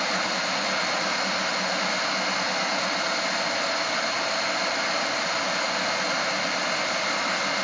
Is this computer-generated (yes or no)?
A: no